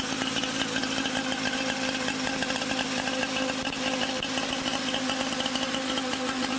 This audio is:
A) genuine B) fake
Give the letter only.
A